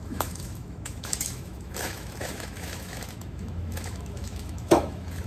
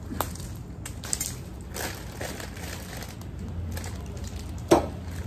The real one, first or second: second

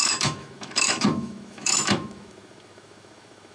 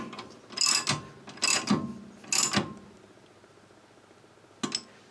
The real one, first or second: second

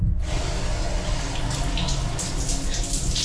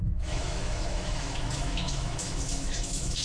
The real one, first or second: first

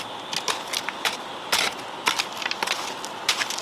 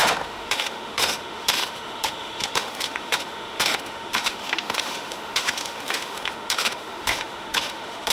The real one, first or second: first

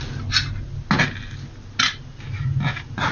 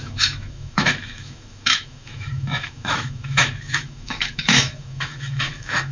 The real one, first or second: first